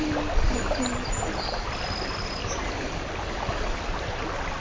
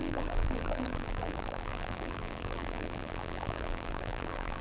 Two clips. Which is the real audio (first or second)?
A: first